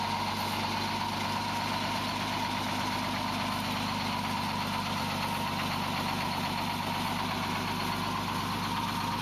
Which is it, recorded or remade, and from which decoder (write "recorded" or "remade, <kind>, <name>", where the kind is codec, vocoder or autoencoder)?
recorded